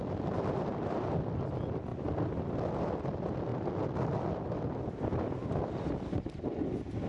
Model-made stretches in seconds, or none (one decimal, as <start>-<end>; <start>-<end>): none